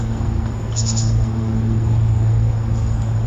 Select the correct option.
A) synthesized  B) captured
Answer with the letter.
A